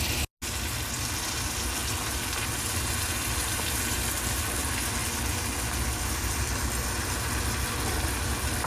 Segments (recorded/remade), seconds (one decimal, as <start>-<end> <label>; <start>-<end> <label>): 0.0-8.7 recorded